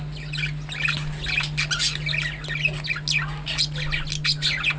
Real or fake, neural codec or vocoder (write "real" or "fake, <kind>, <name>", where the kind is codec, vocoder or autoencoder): real